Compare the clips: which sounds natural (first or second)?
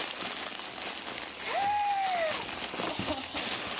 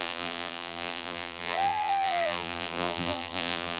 first